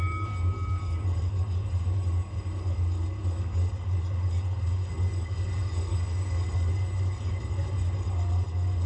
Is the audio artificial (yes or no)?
yes